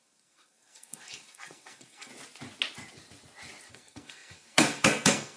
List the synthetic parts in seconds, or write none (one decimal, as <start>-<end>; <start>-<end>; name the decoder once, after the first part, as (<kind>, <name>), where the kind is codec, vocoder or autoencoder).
0.0-2.1 (codec, SNAC); 3.7-5.4